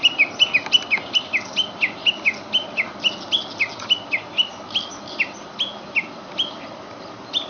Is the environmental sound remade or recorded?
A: recorded